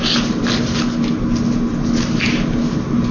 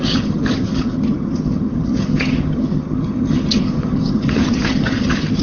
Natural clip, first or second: first